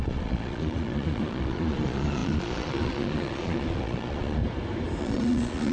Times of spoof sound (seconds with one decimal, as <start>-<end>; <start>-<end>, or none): 0.0-4.4; 5.0-5.7